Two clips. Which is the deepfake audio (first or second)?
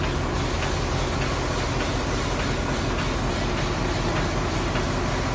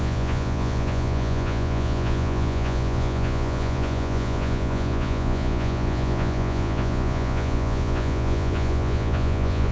second